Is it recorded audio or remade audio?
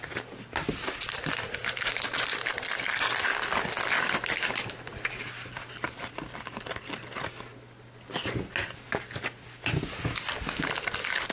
recorded